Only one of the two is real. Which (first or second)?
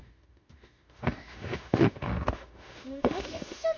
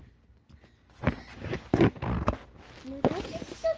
second